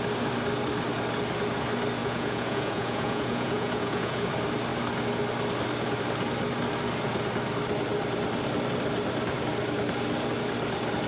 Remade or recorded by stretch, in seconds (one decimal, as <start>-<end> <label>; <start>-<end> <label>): 0.0-2.0 recorded; 2.0-4.3 remade; 4.3-11.1 recorded